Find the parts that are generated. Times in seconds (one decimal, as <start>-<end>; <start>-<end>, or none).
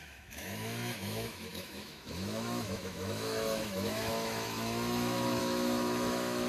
0.0-6.5